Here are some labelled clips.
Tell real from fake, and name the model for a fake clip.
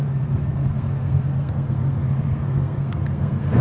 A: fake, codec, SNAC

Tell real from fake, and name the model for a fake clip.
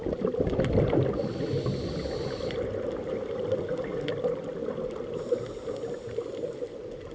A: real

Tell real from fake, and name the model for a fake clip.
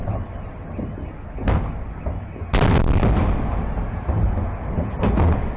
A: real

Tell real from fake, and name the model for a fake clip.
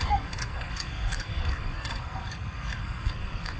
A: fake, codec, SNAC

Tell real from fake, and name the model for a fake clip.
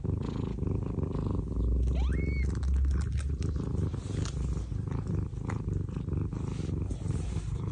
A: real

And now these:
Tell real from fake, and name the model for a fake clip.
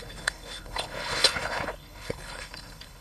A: fake, codec, HILCodec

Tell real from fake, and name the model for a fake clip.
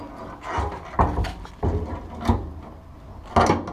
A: real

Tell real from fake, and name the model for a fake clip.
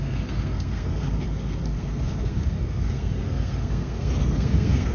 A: fake, codec, SNAC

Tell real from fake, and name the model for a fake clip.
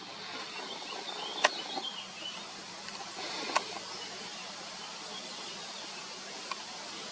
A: real